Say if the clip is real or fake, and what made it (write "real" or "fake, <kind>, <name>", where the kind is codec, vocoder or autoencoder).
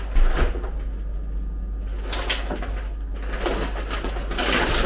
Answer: real